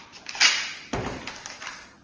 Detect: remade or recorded recorded